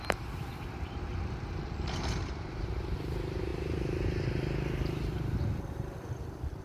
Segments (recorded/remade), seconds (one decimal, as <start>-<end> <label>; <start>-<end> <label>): 0.0-1.1 remade; 1.1-2.6 recorded; 2.6-6.6 remade